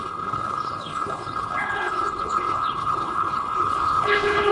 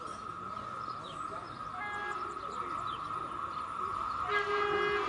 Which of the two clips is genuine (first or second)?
second